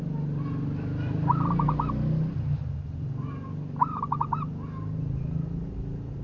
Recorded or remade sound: recorded